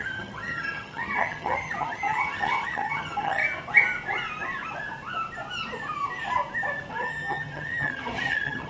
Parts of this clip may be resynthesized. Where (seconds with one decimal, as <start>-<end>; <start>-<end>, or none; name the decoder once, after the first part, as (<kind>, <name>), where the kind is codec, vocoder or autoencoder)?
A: 0.0-3.4 (vocoder, HiFi-GAN); 6.9-8.7